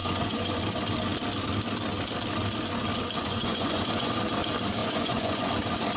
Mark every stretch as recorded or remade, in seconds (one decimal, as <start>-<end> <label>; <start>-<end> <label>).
0.0-0.6 remade; 0.6-3.2 recorded; 3.2-4.1 remade; 4.1-4.8 recorded; 4.8-5.5 remade; 5.5-6.0 recorded

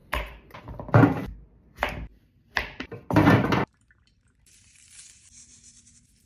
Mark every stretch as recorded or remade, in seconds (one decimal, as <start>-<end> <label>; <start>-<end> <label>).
0.0-0.6 remade; 0.6-2.1 recorded; 2.1-6.3 remade

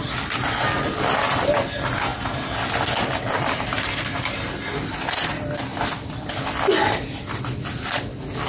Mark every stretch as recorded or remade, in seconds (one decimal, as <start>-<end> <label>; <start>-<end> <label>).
0.0-2.1 remade; 2.1-4.2 recorded; 4.2-5.7 remade; 5.7-8.5 recorded

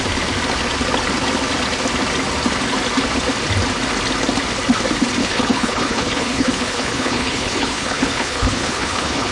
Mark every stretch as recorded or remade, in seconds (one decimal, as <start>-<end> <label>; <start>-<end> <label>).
0.0-5.2 recorded; 5.2-9.3 remade

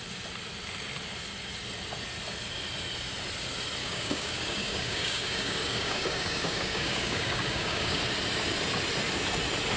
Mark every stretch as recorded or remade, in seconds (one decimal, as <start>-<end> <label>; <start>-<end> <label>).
0.0-3.8 recorded; 3.8-8.0 remade; 8.0-9.8 recorded

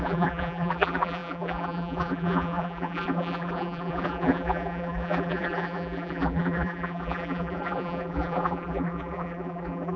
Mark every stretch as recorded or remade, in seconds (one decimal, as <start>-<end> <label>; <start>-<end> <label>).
0.0-10.0 remade